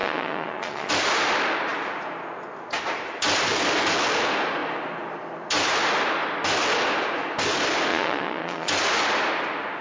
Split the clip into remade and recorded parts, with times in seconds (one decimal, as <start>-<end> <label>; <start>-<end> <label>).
0.0-0.9 remade; 0.9-7.9 recorded; 7.9-8.7 remade; 8.7-9.8 recorded